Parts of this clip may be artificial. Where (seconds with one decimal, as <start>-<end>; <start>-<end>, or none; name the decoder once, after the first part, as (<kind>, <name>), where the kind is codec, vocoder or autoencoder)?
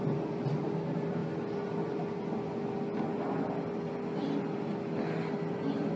none